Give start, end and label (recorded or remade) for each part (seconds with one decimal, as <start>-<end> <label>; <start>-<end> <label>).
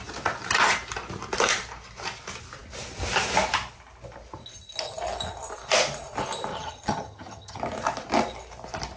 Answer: 0.0-6.5 recorded; 6.5-7.6 remade; 7.6-9.0 recorded